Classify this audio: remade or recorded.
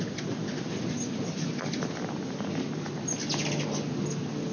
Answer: recorded